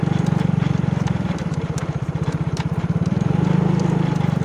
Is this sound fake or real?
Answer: fake